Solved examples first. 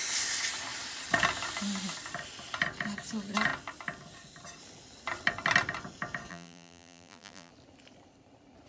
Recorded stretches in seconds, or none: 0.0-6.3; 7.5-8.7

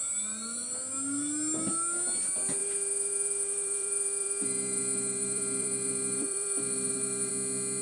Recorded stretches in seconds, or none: 0.0-2.6; 7.3-7.8

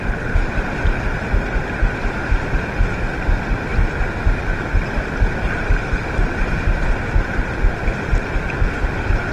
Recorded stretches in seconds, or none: 0.0-9.3

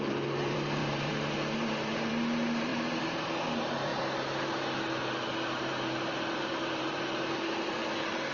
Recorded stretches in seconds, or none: 3.9-5.6

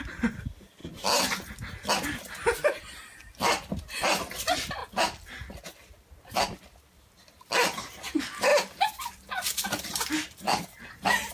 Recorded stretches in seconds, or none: 0.8-4.2; 4.8-6.2; 8.5-9.0

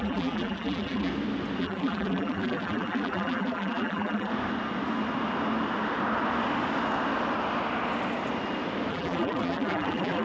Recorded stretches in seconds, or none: 1.1-1.6; 4.3-8.9